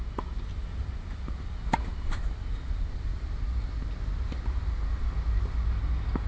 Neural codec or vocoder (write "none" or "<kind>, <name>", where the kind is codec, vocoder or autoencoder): none